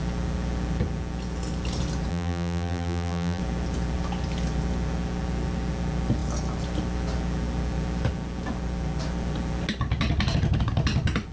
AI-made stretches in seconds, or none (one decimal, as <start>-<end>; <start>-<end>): 2.1-3.4